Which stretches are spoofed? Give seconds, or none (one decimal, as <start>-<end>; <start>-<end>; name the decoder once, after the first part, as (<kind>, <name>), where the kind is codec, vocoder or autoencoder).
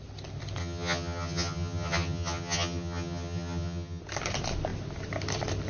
0.6-4.0 (vocoder, HiFi-GAN)